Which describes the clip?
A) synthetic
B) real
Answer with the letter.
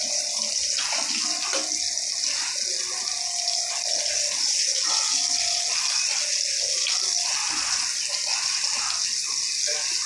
B